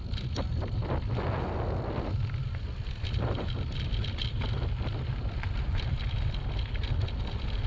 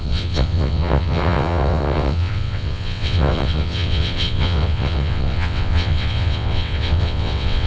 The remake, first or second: second